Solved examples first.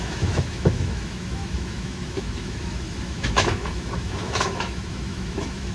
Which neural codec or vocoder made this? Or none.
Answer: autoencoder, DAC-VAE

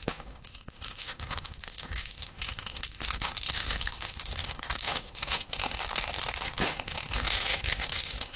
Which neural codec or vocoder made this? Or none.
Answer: autoencoder, DAC-VAE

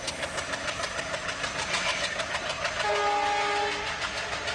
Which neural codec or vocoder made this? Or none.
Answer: none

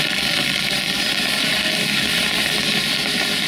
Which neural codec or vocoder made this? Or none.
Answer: none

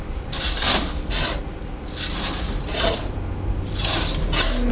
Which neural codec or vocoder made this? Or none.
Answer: none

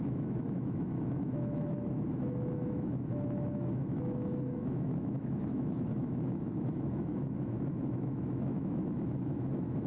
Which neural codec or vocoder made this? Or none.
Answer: autoencoder, DAC-VAE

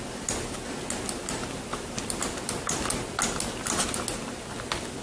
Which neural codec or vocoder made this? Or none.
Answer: none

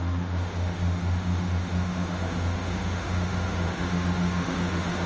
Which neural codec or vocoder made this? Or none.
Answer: autoencoder, DAC-VAE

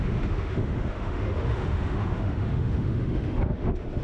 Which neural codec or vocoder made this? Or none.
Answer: autoencoder, DAC-VAE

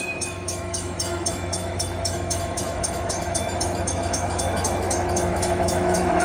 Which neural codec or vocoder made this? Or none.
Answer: autoencoder, DAC-VAE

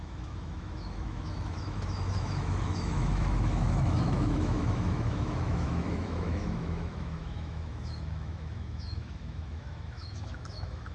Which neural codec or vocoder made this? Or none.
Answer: autoencoder, DAC-VAE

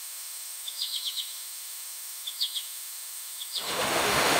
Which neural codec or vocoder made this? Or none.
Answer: autoencoder, DAC-VAE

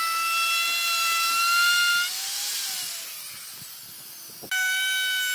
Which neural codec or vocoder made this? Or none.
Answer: none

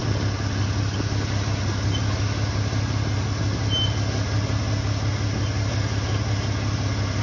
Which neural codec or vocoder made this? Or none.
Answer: none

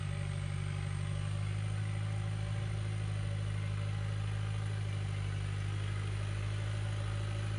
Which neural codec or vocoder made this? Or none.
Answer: none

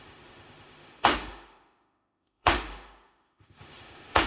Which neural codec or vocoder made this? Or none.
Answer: autoencoder, DAC-VAE